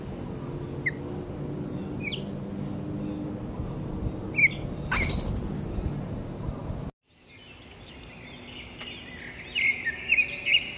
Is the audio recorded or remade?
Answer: recorded